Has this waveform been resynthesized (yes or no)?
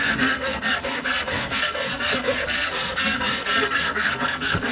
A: yes